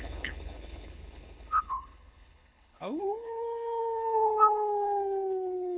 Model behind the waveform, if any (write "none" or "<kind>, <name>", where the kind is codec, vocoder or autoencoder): codec, HILCodec